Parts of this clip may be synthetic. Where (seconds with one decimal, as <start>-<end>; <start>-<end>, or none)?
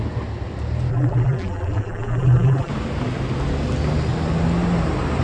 0.9-2.7